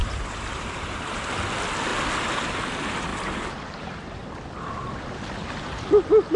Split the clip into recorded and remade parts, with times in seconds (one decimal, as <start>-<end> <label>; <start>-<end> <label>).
0.0-1.3 remade; 1.3-3.1 recorded; 3.1-4.3 remade; 4.3-6.4 recorded